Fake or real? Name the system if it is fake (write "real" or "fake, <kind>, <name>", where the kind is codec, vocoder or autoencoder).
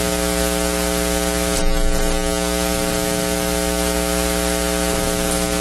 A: real